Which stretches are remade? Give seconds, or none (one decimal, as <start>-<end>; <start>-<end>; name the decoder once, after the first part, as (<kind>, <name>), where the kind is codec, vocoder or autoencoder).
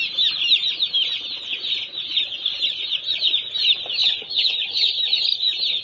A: 4.0-4.9 (vocoder, HiFi-GAN)